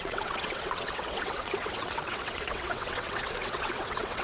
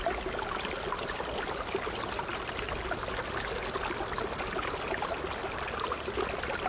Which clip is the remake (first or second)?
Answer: first